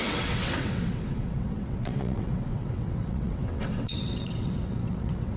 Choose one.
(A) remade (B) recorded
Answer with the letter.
A